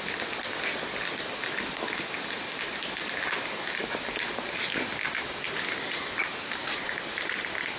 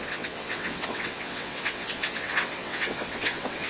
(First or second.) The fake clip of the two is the second